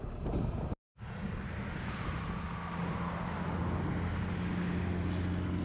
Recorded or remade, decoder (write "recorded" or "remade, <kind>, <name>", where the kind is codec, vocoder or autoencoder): recorded